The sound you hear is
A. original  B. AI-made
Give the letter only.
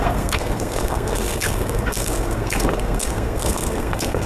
B